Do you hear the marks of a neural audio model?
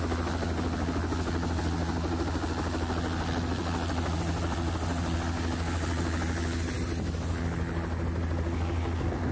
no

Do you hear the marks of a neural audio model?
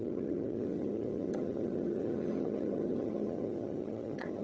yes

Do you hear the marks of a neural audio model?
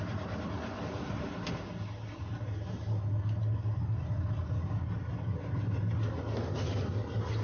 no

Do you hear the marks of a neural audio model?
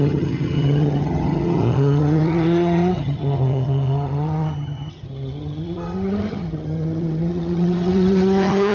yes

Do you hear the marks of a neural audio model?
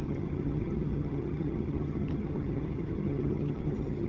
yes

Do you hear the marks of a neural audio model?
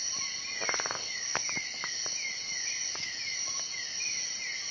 no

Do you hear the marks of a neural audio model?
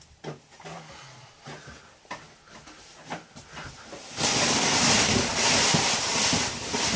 no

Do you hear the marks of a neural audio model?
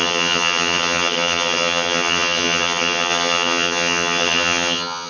yes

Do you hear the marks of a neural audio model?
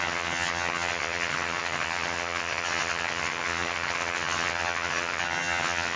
yes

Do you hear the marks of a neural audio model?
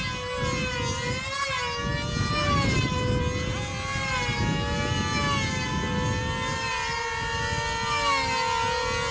no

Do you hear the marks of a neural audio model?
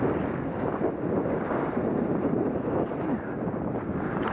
no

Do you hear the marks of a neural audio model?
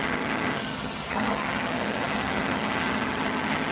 yes